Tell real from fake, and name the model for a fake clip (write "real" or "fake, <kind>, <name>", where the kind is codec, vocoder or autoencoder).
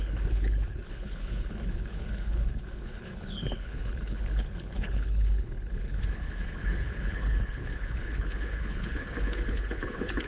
fake, codec, HILCodec